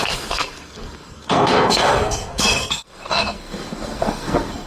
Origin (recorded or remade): remade